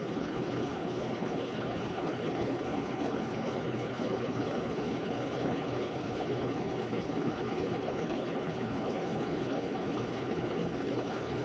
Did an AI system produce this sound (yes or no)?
yes